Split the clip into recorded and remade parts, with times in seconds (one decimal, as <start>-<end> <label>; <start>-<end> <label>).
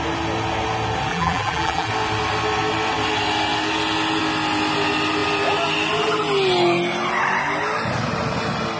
0.0-1.1 recorded; 1.1-1.9 remade; 1.9-8.8 recorded